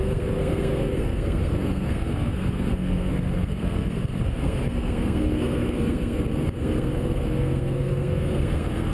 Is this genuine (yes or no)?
no